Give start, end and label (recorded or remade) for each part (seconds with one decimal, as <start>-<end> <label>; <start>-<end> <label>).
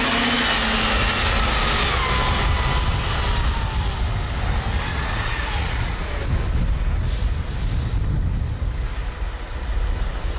0.0-4.9 recorded; 4.9-6.0 remade; 6.0-10.4 recorded